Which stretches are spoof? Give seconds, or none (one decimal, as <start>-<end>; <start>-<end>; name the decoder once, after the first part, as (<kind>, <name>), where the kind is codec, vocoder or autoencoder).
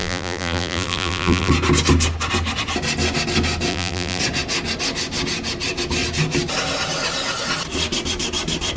0.0-1.5 (vocoder, BigVGAN v2); 3.7-4.2